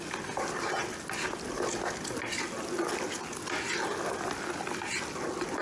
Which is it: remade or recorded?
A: recorded